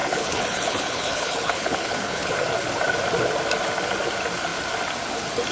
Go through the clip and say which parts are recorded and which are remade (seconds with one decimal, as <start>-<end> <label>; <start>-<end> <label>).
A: 0.0-2.3 remade; 2.3-5.5 recorded